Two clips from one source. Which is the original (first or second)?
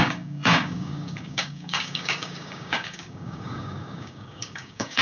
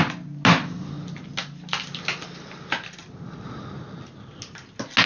second